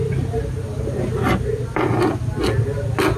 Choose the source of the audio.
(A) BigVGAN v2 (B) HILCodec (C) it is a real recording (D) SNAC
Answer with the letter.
C